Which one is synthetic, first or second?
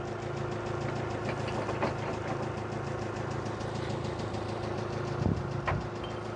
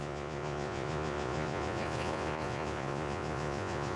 second